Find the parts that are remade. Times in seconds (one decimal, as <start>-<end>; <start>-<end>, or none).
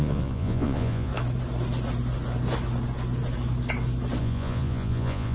0.0-1.1; 4.2-5.3